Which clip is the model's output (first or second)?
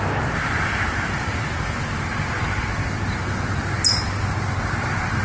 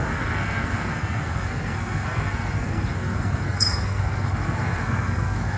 second